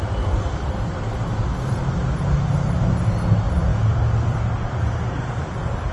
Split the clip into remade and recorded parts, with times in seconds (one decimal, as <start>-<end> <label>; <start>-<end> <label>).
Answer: 0.0-5.9 recorded